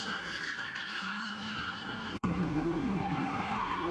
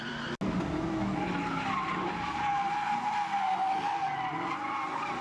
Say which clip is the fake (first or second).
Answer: first